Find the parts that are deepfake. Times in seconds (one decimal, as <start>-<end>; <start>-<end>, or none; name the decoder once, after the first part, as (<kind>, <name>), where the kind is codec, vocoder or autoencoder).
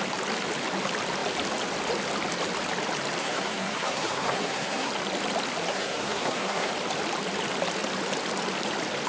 3.2-4.9 (codec, SNAC); 5.7-6.7